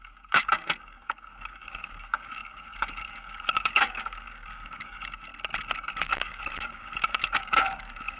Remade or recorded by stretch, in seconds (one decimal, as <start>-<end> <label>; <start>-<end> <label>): 0.0-5.3 remade; 5.3-6.0 recorded; 6.0-8.2 remade